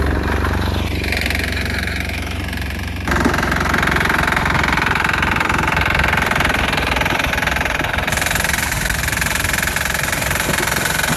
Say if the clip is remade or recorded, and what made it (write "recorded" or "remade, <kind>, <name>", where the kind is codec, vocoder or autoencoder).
recorded